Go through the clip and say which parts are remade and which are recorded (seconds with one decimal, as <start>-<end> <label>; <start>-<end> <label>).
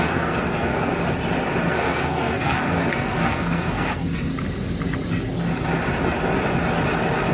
0.0-0.9 remade; 0.9-1.7 recorded; 1.7-4.3 remade; 4.3-7.3 recorded